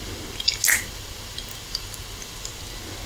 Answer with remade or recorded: recorded